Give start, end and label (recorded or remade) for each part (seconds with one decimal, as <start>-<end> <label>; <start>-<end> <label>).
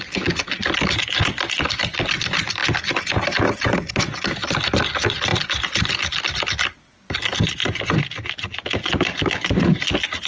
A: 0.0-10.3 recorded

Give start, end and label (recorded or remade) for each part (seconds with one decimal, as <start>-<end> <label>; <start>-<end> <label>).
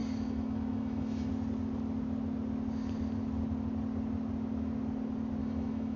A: 0.0-1.3 remade; 1.3-5.4 recorded; 5.4-6.0 remade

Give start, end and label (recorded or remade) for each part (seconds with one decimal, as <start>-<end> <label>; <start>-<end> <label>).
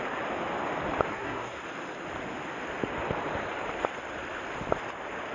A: 0.0-1.1 recorded; 1.1-1.6 remade; 1.6-5.3 recorded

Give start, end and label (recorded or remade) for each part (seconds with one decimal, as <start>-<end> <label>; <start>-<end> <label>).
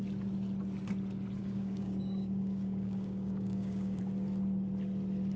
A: 0.0-1.4 recorded; 1.4-4.0 remade; 4.0-5.4 recorded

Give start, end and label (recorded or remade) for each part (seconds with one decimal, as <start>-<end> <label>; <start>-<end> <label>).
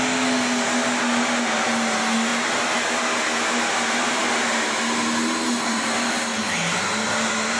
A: 0.0-7.6 recorded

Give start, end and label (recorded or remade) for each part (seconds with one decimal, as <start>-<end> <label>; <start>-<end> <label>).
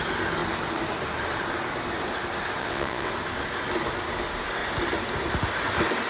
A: 0.0-2.6 recorded; 2.6-3.1 remade; 3.1-6.1 recorded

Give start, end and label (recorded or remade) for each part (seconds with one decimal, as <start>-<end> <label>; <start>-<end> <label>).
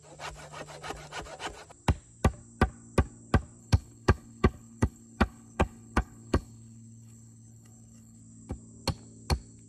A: 0.0-3.6 recorded; 3.6-8.2 remade; 8.2-9.7 recorded